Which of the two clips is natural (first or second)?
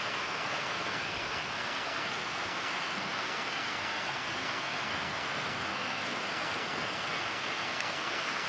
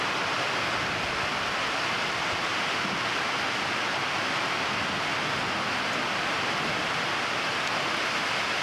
second